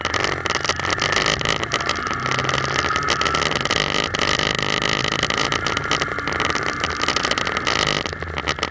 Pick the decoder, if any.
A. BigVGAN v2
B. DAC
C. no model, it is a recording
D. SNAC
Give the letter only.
C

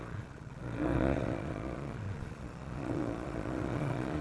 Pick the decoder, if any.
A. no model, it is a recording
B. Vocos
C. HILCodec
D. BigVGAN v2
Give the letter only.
B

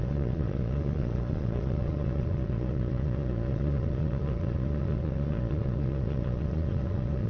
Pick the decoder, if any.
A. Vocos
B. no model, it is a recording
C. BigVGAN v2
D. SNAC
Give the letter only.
A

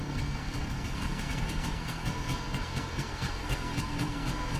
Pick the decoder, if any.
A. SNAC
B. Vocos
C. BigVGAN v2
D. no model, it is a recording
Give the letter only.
A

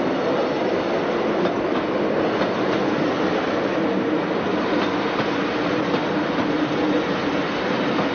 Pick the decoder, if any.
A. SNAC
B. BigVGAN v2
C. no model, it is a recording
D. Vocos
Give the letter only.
C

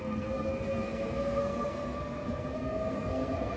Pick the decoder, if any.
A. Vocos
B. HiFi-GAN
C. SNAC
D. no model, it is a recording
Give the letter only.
C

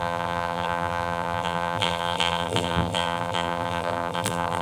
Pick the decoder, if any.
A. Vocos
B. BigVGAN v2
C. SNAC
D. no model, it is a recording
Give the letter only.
B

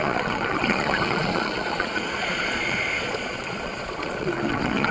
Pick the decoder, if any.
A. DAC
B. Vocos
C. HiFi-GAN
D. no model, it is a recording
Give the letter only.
B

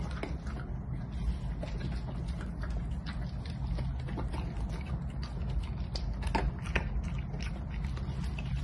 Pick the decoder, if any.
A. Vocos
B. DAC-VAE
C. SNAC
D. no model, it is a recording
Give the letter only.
D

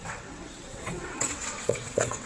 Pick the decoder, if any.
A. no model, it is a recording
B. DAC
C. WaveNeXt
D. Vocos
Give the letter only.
C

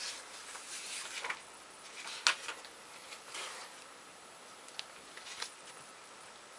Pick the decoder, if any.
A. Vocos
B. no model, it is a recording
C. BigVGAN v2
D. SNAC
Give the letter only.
B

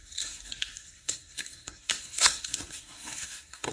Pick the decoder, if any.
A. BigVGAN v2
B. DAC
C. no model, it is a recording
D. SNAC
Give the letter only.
D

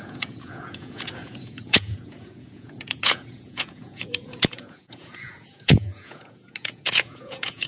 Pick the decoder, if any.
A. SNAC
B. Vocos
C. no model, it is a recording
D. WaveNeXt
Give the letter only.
B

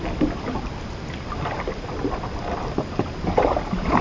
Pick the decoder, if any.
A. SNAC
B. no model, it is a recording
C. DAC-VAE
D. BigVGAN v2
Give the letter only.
B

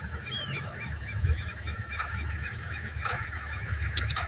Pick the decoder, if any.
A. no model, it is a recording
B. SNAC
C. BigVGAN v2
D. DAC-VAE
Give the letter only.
D